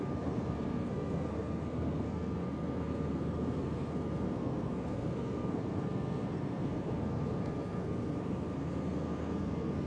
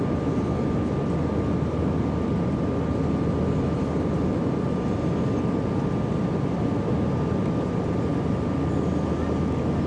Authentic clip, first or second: second